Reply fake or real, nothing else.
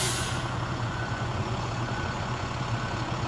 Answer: fake